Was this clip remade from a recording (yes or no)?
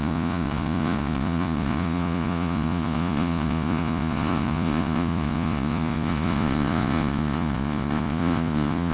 yes